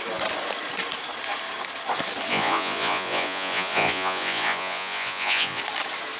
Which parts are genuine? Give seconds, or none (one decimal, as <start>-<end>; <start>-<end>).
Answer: 0.0-2.3; 5.6-6.2